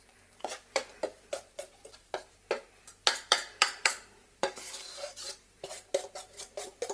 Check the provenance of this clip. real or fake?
fake